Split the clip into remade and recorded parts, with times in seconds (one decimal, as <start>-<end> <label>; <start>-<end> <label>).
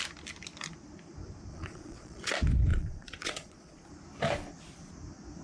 0.0-1.5 recorded; 1.5-2.3 remade; 2.3-2.7 recorded; 2.7-3.9 remade; 3.9-5.4 recorded